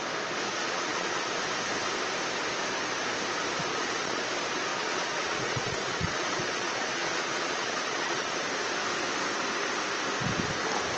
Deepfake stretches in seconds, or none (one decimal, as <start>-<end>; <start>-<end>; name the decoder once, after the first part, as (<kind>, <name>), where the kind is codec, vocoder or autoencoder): 0.5-1.3 (vocoder, Vocos); 3.7-4.2; 4.7-8.5